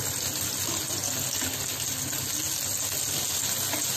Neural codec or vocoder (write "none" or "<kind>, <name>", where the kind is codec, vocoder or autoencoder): none